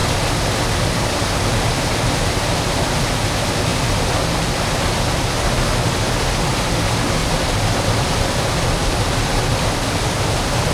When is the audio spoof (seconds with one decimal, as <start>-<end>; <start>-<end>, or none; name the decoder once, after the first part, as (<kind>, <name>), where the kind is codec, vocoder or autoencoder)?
7.2-10.7 (vocoder, BigVGAN v2)